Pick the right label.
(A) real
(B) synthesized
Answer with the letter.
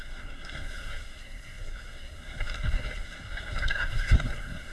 B